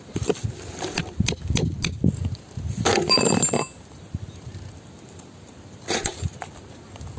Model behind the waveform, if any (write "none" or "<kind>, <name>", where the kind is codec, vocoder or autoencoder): none